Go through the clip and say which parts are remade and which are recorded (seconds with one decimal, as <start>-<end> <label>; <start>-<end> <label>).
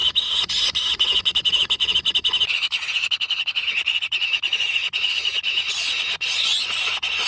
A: 0.0-7.3 recorded